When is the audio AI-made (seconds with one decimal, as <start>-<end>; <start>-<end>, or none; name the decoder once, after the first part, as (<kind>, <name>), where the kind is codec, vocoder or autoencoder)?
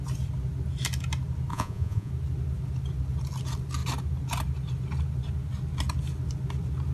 1.5-2.1 (vocoder, Vocos)